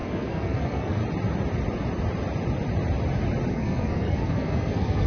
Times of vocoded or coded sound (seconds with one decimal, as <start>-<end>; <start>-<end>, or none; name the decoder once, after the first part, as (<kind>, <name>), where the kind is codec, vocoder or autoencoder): 0.0-1.0 (codec, SNAC); 3.5-5.1